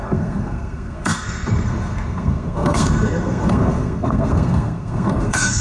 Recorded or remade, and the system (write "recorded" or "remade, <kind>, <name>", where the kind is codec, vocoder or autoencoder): remade, codec, SNAC